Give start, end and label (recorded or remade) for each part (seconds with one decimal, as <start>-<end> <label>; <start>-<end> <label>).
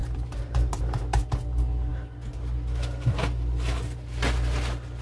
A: 0.0-0.7 remade; 0.7-5.0 recorded